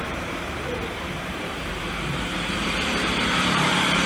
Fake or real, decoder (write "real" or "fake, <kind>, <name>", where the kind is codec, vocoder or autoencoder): fake, vocoder, BigVGAN v2